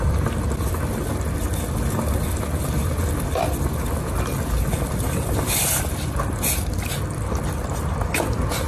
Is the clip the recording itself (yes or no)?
yes